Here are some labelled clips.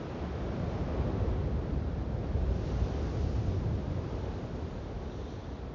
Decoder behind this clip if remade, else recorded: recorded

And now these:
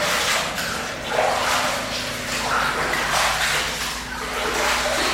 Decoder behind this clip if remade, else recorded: recorded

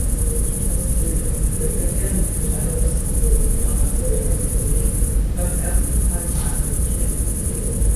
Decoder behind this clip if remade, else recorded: recorded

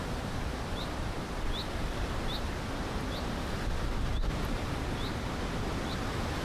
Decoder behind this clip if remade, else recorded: recorded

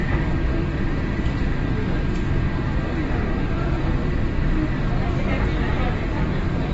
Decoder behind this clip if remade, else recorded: recorded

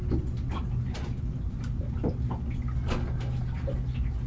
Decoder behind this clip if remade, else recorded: recorded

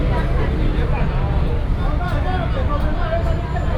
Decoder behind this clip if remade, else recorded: recorded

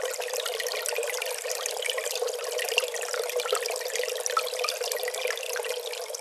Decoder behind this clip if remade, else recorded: recorded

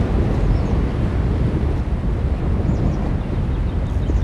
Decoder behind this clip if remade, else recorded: recorded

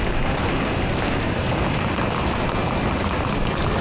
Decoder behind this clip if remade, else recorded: recorded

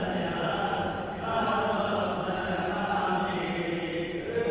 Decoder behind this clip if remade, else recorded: remade, vocoder, BigVGAN v2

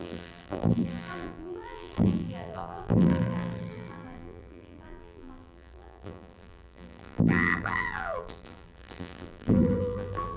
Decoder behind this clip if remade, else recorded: remade, vocoder, BigVGAN v2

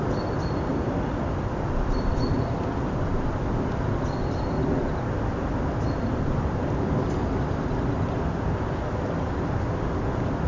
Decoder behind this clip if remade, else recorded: recorded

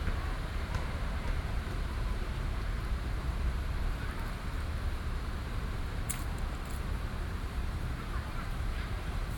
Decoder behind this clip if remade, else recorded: remade, vocoder, BigVGAN v2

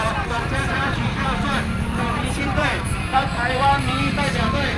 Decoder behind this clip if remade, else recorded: remade, vocoder, BigVGAN v2